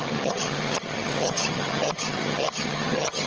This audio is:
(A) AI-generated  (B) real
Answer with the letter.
A